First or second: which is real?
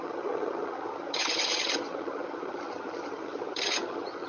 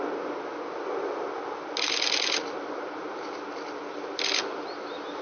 second